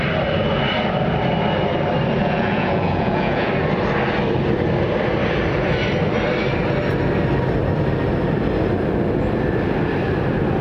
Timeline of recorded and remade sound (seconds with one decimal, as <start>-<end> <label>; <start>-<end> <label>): 0.0-2.2 recorded; 2.2-3.5 remade; 3.5-10.6 recorded